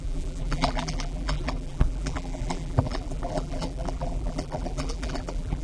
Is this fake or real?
fake